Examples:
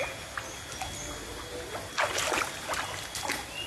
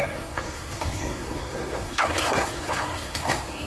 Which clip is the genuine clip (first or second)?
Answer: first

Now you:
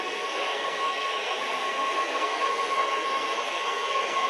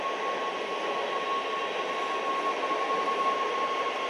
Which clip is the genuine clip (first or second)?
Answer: second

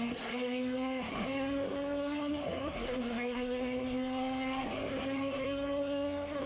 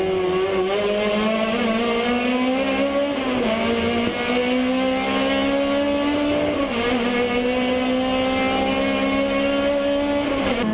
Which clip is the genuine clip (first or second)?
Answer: second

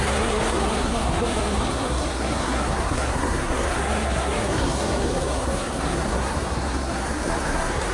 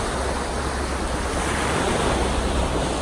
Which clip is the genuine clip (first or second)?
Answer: second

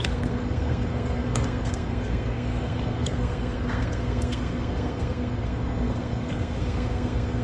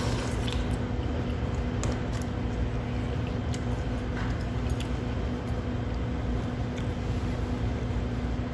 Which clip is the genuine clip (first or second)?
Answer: second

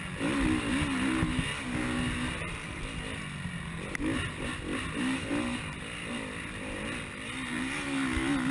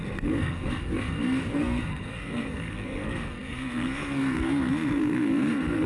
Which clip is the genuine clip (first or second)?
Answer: first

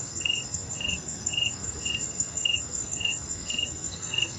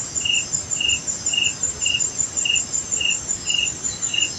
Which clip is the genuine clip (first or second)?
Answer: second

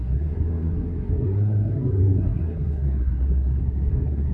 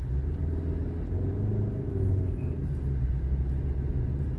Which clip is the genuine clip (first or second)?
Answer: second